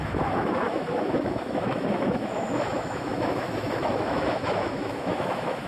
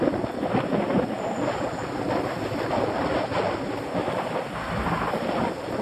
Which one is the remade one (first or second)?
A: first